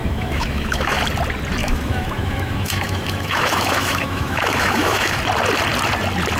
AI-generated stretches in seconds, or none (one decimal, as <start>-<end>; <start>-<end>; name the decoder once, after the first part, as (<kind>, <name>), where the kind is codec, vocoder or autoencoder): 0.0-1.0 (autoencoder, DAC-VAE); 1.6-5.2